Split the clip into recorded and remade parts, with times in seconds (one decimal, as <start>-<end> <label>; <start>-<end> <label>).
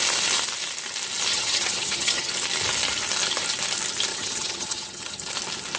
0.0-1.3 recorded; 1.3-2.3 remade; 2.3-4.1 recorded; 4.1-5.3 remade; 5.3-5.8 recorded